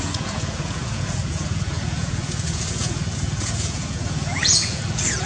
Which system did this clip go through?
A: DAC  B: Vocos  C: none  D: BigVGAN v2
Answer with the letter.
B